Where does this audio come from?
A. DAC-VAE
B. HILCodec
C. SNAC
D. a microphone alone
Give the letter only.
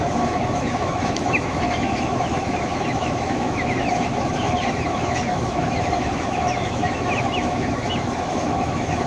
A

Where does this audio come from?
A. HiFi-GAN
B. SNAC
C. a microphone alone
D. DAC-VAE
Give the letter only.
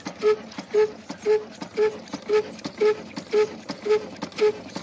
C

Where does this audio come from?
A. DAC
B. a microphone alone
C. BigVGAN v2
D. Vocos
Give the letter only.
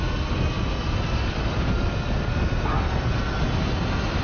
B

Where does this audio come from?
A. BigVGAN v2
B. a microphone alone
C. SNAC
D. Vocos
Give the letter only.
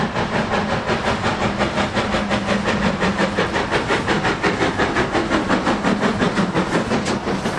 B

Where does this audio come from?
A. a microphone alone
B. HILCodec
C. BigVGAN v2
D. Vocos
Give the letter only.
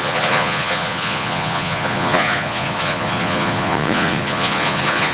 D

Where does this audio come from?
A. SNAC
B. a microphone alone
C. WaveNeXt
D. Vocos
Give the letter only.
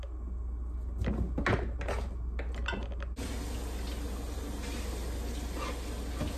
B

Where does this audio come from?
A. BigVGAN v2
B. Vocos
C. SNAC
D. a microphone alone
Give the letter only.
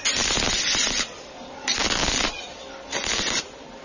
D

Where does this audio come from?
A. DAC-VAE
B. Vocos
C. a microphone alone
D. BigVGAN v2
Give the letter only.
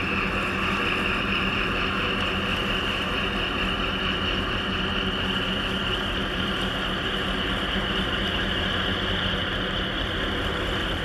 C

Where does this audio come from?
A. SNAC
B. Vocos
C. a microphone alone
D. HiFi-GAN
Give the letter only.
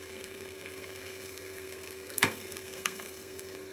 A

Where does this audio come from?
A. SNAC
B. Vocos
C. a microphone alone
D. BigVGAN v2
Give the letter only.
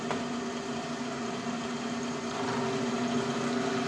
C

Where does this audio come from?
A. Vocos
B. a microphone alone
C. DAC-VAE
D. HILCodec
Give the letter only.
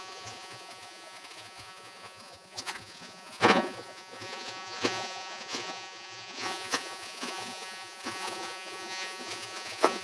A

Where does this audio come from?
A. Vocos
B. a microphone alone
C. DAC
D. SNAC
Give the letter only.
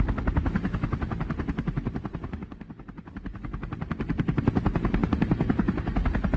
B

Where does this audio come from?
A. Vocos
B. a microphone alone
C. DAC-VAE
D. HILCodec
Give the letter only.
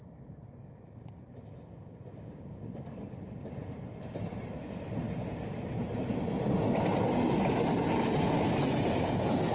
B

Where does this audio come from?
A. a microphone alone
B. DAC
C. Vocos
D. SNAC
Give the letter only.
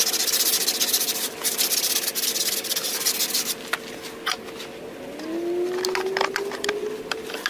A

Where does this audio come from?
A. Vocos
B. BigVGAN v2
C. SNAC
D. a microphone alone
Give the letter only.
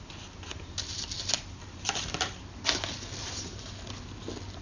D